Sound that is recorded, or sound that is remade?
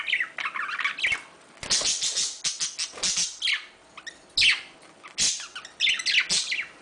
recorded